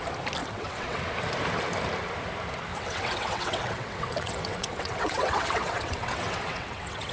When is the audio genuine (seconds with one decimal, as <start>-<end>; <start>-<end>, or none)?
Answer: 0.0-0.4; 1.0-2.7